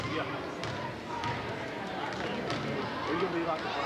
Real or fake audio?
real